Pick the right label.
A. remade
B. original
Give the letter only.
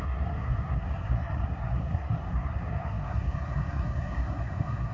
A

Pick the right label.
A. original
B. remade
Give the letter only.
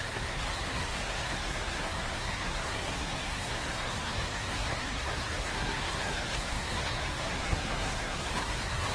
B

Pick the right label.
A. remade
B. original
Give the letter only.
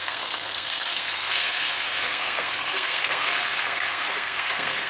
A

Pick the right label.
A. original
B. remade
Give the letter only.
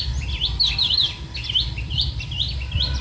A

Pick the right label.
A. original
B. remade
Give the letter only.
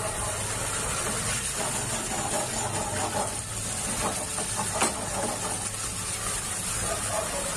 A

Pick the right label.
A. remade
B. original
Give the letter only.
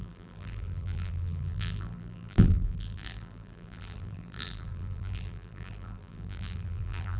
A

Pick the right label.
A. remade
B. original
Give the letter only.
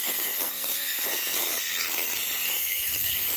A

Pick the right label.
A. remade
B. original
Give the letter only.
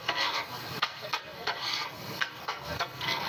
A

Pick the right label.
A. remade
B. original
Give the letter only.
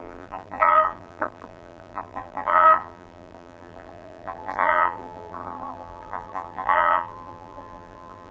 A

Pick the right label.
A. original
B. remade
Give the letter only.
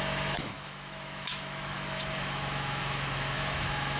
B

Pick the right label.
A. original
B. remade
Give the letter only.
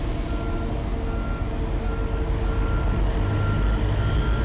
A